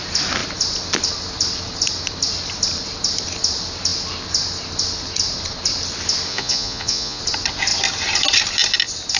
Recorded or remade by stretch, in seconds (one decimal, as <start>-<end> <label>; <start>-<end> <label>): 0.0-6.3 recorded; 6.3-7.2 remade; 7.2-9.2 recorded